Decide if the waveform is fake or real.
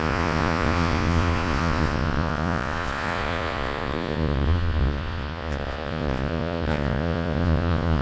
fake